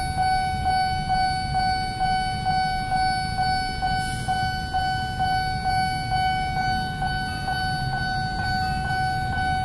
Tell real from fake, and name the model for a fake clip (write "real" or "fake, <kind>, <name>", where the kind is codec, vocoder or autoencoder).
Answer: real